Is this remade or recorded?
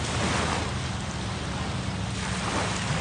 recorded